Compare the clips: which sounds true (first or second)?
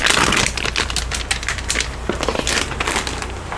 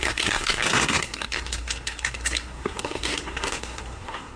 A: first